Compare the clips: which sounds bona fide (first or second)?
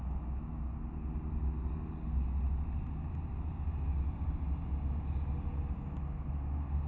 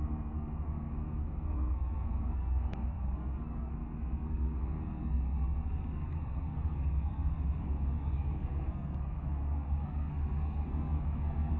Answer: first